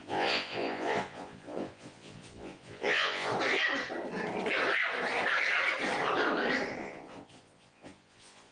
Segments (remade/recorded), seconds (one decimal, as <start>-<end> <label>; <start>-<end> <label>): 0.0-3.3 remade; 3.3-6.8 recorded; 6.8-8.5 remade